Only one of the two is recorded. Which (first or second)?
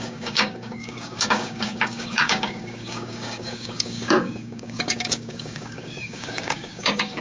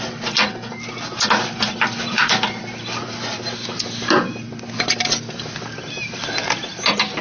second